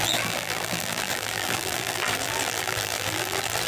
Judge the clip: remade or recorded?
remade